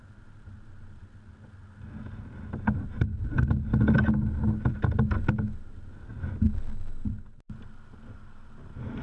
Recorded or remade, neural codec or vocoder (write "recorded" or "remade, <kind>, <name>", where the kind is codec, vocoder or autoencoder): recorded